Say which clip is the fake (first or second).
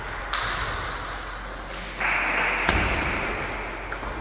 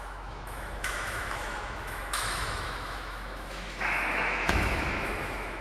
second